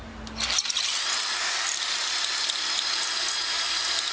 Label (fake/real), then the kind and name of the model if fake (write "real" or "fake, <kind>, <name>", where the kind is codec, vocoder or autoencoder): real